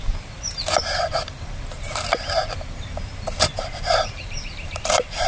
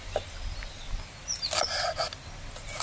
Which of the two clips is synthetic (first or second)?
first